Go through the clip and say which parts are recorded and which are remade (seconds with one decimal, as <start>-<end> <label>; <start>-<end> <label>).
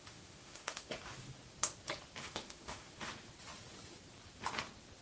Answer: 0.0-0.9 remade; 0.9-2.2 recorded; 2.2-3.1 remade; 3.1-5.0 recorded